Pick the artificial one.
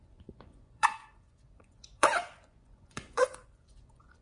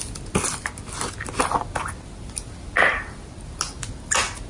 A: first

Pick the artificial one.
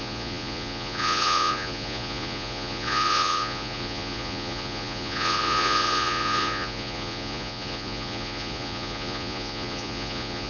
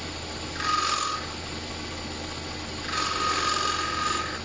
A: first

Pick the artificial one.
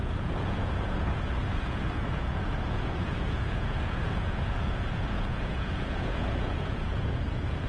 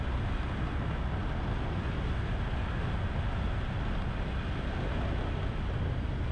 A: first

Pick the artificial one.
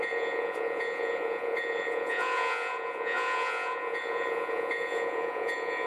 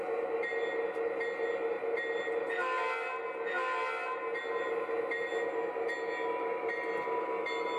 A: first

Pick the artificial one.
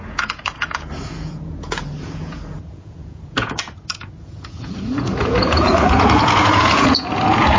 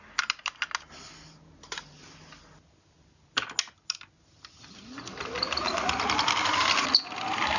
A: first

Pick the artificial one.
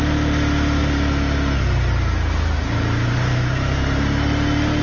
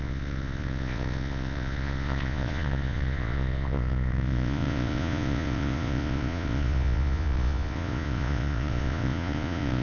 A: second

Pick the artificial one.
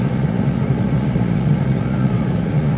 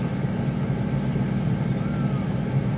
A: first